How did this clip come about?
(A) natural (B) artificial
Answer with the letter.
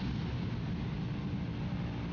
A